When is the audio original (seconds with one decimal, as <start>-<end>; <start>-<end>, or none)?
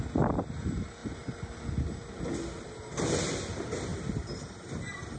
0.0-3.9